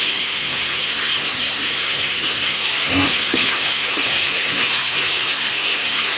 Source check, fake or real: fake